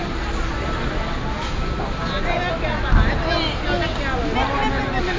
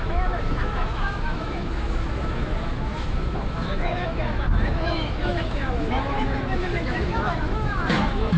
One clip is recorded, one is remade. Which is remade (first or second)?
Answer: second